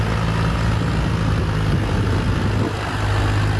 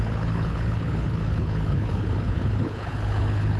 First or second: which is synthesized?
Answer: second